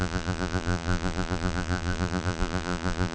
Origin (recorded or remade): remade